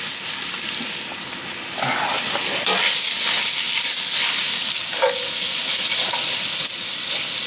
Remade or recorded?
recorded